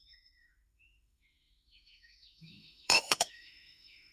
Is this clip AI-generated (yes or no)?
yes